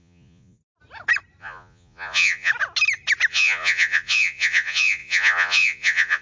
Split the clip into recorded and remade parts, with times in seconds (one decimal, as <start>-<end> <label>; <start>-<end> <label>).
0.0-0.6 remade; 0.6-1.4 recorded; 1.4-2.5 remade; 2.5-3.3 recorded; 3.3-6.2 remade